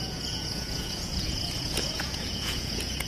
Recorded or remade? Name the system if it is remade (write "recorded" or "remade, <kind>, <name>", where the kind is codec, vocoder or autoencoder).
remade, vocoder, Vocos